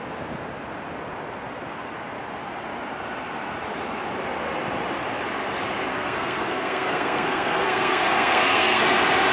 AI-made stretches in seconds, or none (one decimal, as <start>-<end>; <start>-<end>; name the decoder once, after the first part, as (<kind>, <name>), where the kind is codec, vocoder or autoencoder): 5.9-8.8 (codec, SNAC)